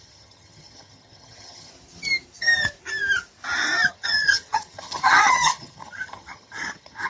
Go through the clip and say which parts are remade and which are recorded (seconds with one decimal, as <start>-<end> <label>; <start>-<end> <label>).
0.0-1.7 remade; 1.7-3.9 recorded; 3.9-7.1 remade